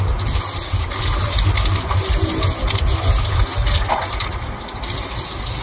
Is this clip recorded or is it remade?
recorded